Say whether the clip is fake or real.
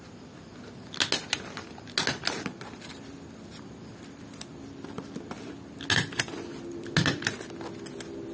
real